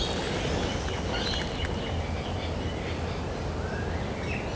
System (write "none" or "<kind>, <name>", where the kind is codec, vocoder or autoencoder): none